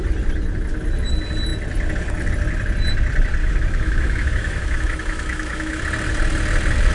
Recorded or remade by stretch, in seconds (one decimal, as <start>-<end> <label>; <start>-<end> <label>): 0.0-3.4 recorded; 3.4-5.8 remade; 5.8-6.9 recorded